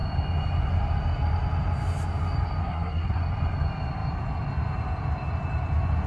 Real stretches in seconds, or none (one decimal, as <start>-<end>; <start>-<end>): 0.0-2.6; 3.2-6.1